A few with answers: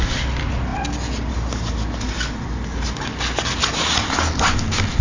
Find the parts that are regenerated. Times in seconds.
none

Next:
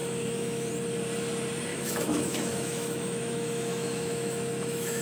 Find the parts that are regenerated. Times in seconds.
0.0-0.7; 1.7-5.0